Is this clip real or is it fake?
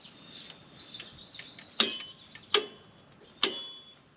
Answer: real